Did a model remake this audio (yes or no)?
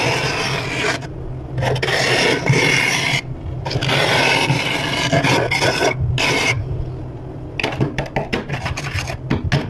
no